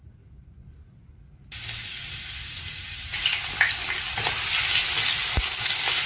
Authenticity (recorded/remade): recorded